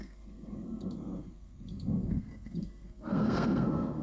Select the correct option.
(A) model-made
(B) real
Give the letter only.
A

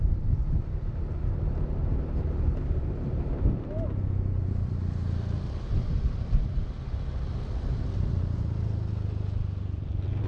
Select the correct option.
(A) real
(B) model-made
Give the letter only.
A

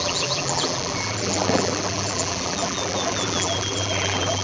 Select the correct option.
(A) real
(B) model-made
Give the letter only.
B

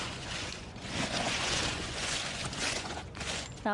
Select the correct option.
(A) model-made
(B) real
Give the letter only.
A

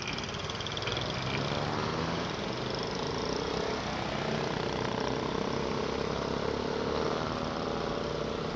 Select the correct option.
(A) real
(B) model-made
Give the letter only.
A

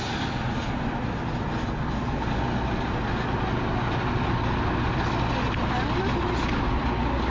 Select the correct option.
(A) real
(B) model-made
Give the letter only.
A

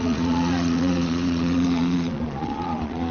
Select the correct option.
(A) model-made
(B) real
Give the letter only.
A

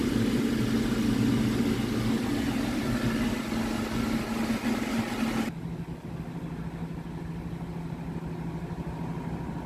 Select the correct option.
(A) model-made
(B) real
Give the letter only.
B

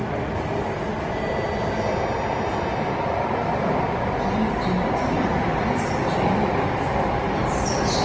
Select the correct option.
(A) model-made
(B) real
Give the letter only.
B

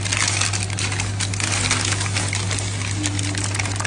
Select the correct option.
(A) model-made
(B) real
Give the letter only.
B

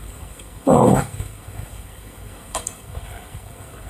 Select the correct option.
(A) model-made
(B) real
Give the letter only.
A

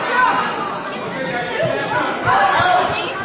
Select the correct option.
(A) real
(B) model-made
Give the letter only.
A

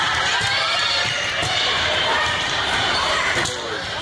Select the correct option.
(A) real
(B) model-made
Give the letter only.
B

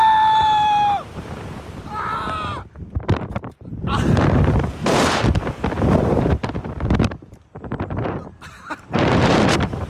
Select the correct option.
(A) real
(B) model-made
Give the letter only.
B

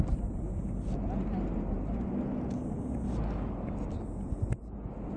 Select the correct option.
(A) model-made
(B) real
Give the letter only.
B